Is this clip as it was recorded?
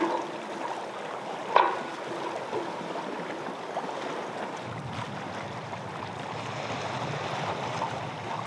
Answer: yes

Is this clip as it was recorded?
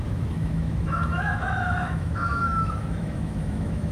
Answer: no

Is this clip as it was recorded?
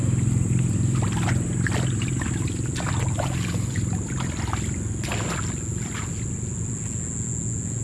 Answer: yes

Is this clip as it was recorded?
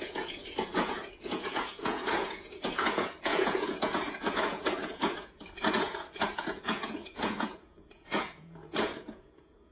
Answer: no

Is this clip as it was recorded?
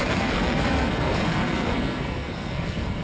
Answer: no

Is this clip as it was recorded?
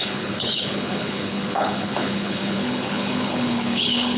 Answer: no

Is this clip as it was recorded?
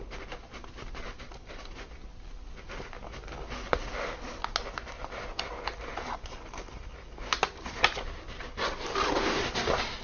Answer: yes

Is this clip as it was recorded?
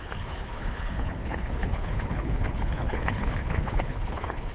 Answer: no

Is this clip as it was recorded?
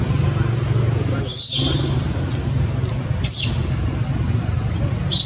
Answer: yes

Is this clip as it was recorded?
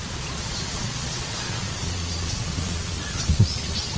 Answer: no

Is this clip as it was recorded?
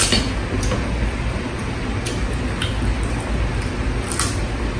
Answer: yes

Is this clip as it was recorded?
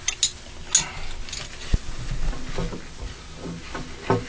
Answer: yes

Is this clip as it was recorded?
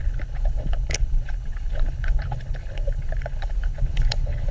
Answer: no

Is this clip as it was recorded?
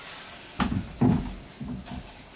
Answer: yes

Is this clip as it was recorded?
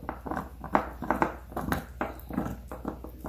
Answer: yes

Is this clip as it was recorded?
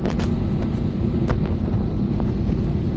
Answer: yes